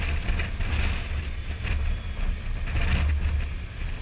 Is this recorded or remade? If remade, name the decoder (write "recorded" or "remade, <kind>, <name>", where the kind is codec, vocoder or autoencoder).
recorded